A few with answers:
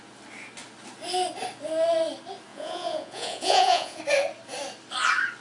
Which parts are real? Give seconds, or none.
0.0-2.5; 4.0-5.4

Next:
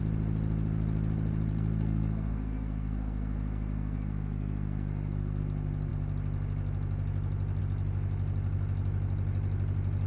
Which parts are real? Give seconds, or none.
0.0-1.5; 5.4-10.1